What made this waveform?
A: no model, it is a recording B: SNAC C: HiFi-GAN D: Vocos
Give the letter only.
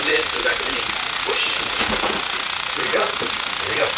D